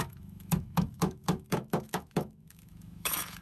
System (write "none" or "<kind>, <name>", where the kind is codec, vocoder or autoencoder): autoencoder, DAC-VAE